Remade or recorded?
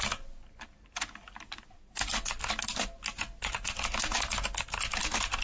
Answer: recorded